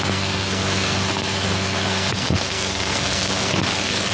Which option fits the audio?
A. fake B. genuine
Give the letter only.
A